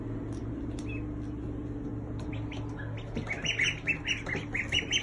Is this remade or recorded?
recorded